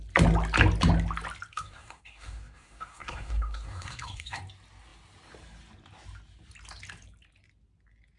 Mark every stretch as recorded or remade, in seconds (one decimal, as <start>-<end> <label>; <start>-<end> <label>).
0.0-1.5 recorded; 1.5-4.4 remade; 4.4-8.2 recorded